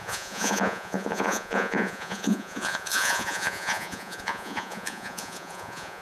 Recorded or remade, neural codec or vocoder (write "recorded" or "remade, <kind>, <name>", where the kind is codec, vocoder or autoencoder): remade, vocoder, Vocos